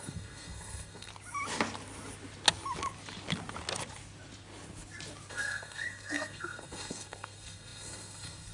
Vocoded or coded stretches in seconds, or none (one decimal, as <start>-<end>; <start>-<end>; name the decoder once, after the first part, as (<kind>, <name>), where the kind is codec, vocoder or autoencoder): 0.0-1.1 (codec, SNAC); 5.3-8.5

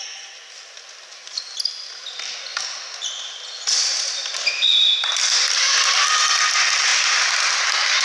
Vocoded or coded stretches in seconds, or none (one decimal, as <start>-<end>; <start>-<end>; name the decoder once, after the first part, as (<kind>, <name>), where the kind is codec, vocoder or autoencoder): none

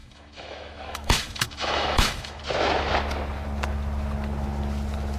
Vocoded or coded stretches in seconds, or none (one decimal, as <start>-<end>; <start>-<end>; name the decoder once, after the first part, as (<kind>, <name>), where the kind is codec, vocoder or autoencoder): 0.0-2.4 (autoencoder, DAC-VAE)

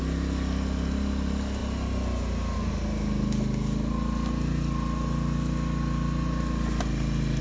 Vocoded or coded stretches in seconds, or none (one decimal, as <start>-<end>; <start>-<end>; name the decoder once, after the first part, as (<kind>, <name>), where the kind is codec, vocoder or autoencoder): none

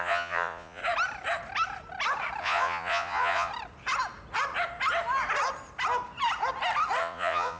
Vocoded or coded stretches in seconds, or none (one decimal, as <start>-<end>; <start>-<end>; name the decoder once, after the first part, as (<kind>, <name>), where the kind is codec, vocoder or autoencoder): 0.0-0.8 (vocoder, Vocos); 2.4-3.5; 7.0-7.6

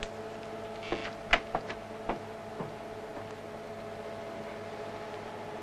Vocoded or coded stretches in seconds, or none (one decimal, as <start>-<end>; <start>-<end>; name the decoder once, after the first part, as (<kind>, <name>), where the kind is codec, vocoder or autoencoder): none

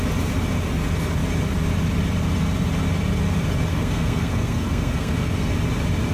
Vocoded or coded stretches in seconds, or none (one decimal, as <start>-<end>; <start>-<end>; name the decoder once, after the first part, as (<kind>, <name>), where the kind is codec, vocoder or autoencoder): 3.7-5.5 (codec, SNAC)

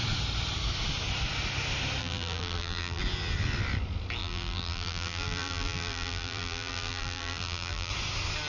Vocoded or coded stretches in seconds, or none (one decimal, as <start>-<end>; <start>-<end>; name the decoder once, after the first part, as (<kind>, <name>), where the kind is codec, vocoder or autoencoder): 2.0-3.0 (vocoder, BigVGAN v2); 4.2-7.9